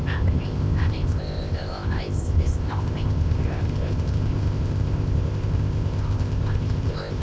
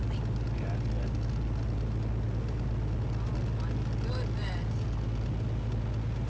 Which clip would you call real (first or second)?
second